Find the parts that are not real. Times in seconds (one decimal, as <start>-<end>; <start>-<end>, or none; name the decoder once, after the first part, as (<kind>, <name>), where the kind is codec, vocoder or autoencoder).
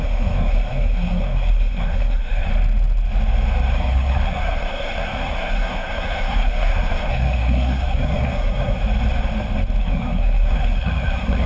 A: 0.0-2.5 (codec, SNAC); 3.7-8.8; 9.8-11.5